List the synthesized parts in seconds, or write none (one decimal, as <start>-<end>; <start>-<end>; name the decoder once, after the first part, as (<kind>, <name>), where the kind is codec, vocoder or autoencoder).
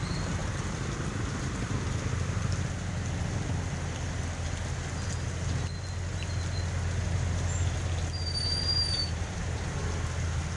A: 0.4-2.1 (vocoder, BigVGAN v2); 9.0-9.8